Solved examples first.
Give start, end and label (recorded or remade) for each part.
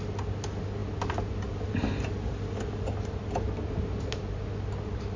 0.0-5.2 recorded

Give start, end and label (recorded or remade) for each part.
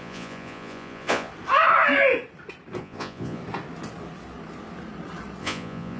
0.0-1.3 remade; 1.3-2.8 recorded; 2.8-3.4 remade; 3.4-5.4 recorded; 5.4-6.0 remade